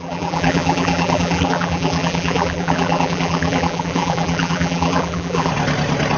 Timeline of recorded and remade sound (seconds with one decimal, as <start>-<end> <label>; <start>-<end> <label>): 0.0-5.5 remade; 5.5-6.2 recorded